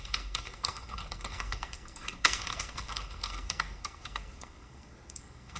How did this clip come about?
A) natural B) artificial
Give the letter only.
B